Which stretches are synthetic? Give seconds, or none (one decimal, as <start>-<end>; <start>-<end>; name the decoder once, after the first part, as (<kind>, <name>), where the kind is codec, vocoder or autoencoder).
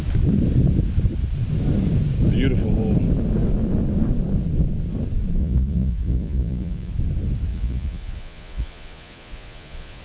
5.4-6.9 (vocoder, Vocos); 7.5-10.0